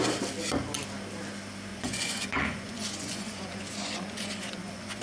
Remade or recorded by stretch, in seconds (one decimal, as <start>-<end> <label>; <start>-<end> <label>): 0.0-1.7 recorded; 1.7-5.0 remade